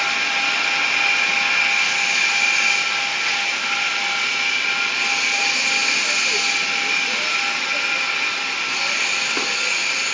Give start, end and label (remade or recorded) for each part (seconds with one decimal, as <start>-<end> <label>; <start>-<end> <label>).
0.0-10.1 recorded